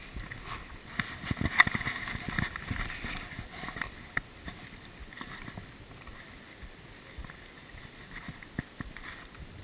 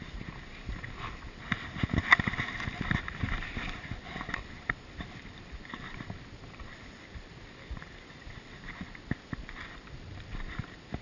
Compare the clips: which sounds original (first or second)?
first